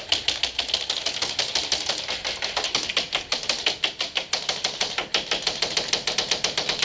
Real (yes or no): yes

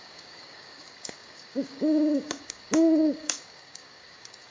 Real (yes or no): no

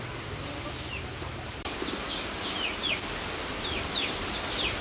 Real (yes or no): yes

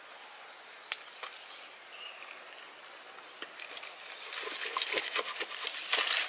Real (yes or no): yes